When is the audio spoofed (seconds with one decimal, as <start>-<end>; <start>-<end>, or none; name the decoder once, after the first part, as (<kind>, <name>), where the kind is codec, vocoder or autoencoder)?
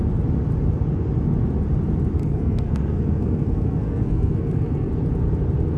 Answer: 2.2-4.9 (codec, SNAC)